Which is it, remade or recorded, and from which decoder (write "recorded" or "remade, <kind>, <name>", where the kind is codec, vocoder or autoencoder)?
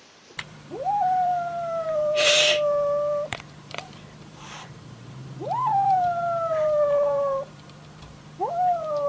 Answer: remade, vocoder, BigVGAN v2